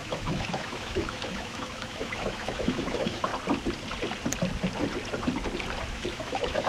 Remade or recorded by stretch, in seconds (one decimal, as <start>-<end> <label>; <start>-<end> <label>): 0.0-3.3 remade; 3.3-5.9 recorded; 5.9-6.7 remade